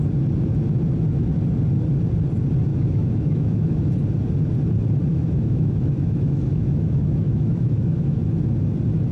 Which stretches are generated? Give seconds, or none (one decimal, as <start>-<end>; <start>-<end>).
2.7-3.9; 5.1-8.2